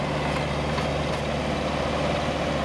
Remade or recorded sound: recorded